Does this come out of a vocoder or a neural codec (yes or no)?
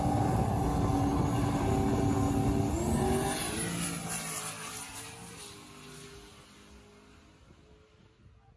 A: no